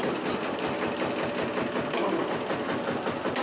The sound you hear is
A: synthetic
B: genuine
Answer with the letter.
B